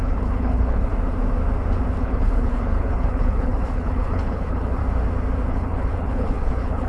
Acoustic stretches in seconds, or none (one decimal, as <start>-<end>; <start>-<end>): 0.9-2.0; 4.8-5.5